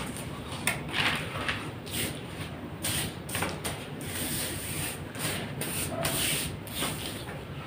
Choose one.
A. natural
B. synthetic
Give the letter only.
A